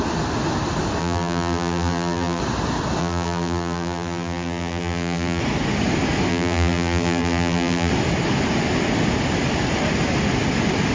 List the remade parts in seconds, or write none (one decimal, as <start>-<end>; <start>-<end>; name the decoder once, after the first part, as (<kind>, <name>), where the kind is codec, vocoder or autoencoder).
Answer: 1.0-2.4 (vocoder, BigVGAN v2); 3.0-5.4; 6.3-7.9